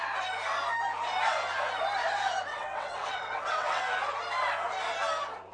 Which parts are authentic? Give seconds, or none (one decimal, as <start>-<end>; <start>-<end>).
0.0-2.5; 3.8-5.5